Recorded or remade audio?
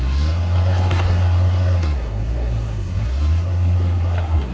remade